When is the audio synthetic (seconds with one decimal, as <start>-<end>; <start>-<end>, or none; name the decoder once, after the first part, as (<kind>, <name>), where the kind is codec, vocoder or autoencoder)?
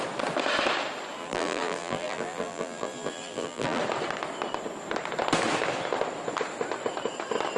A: 1.2-3.8 (vocoder, BigVGAN v2)